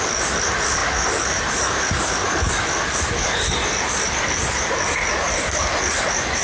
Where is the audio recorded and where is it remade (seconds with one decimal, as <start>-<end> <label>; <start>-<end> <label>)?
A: 0.0-6.4 recorded